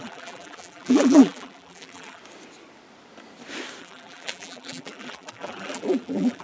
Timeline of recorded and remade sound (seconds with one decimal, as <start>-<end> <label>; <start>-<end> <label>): 0.0-2.2 remade; 2.2-3.8 recorded; 3.8-6.4 remade